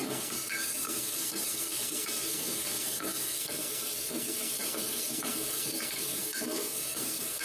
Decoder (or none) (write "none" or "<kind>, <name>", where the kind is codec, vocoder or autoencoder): codec, SNAC